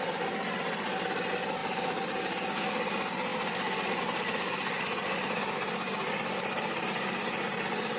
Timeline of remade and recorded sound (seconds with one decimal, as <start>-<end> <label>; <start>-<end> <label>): 0.0-1.6 recorded; 1.6-2.2 remade; 2.2-8.0 recorded